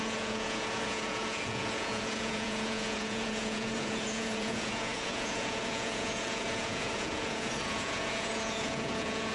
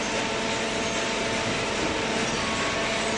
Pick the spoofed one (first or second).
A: first